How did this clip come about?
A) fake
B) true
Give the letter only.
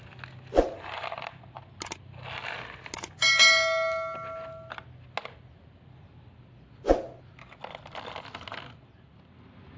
B